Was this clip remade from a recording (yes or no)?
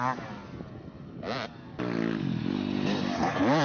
no